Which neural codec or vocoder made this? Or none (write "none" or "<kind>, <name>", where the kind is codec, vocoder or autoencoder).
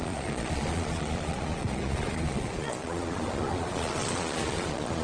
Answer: vocoder, Vocos